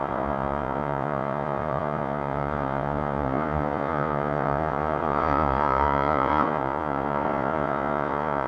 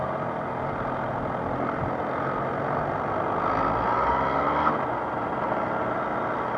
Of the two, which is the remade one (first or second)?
first